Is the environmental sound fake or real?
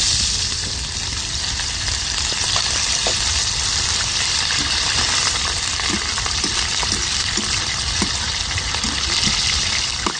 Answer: real